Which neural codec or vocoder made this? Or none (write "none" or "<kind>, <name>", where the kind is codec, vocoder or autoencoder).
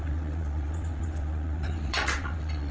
vocoder, WaveNeXt